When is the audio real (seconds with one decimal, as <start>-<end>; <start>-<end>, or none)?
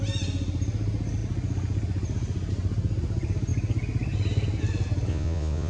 0.0-5.1